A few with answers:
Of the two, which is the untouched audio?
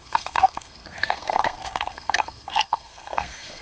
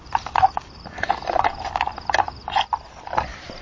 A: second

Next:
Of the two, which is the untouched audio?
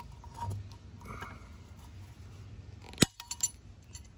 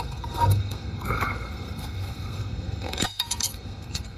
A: first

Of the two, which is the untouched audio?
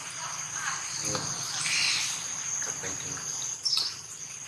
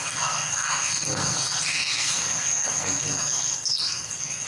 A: first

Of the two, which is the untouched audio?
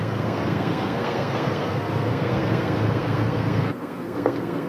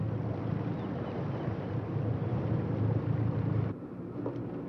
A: second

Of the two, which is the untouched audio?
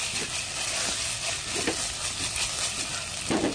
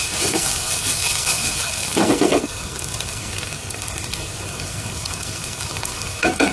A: first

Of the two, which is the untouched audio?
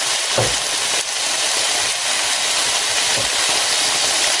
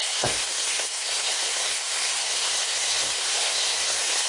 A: first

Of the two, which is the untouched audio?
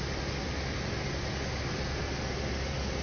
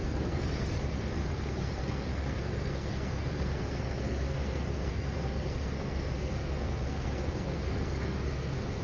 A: first